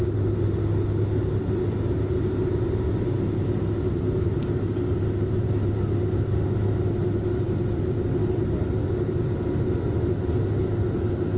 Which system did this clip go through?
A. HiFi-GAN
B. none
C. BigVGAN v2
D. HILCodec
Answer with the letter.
B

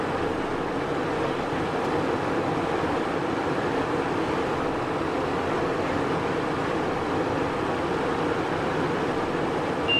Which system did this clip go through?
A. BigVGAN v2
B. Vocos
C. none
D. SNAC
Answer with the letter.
C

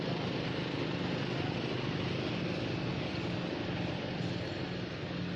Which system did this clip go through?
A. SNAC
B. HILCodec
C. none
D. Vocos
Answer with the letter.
C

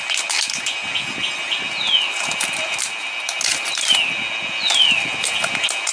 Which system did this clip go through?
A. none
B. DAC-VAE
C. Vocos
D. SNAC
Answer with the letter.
A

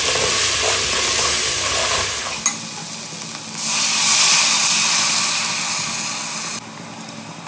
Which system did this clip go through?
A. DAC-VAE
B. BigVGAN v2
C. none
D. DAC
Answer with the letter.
C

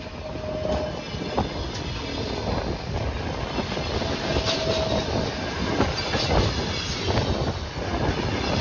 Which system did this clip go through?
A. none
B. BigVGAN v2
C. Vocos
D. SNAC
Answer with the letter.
A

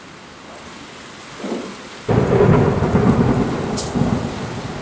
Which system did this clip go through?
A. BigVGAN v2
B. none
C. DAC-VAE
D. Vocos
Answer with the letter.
B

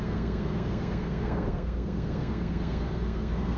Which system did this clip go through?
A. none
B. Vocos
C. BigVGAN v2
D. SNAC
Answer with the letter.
D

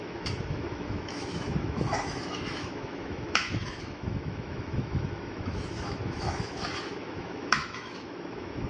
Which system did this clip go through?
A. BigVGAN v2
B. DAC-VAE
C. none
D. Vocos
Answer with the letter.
B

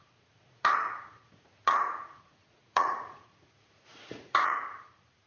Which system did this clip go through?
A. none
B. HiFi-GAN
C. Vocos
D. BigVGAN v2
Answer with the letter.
C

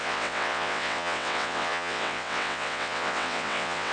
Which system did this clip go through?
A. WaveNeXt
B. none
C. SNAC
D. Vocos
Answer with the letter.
A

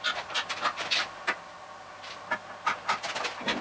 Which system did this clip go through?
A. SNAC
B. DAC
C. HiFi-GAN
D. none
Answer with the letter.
D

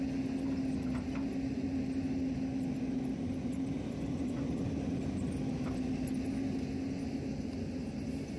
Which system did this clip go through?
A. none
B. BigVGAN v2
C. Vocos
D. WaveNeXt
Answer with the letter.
A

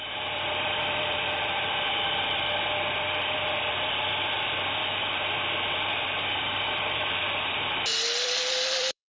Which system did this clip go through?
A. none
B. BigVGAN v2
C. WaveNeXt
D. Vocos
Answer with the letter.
B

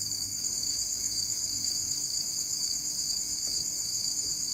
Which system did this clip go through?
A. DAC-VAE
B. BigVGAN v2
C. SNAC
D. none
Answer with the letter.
A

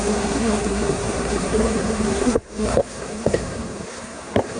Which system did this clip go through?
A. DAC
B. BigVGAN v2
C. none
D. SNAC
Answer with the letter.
D